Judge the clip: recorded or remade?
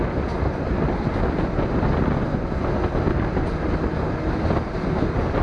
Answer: recorded